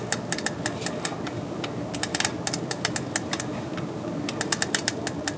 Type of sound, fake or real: real